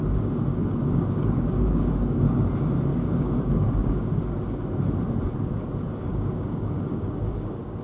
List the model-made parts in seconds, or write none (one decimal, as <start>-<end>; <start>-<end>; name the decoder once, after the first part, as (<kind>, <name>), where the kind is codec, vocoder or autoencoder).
0.5-2.5 (codec, DAC); 2.9-4.2; 6.1-7.8